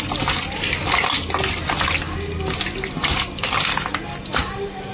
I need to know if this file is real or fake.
real